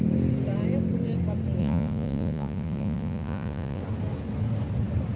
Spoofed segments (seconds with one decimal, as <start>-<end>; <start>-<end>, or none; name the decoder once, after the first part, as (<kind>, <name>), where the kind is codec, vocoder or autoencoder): 1.6-3.8 (vocoder, Vocos)